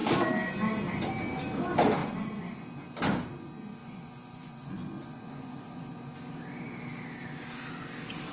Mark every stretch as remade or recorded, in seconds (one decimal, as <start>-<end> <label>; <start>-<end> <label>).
0.0-2.0 recorded; 2.0-2.6 remade; 2.6-3.8 recorded; 3.8-5.8 remade; 5.8-8.3 recorded